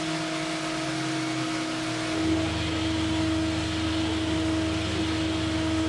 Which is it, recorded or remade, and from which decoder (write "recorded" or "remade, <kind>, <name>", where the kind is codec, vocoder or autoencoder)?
recorded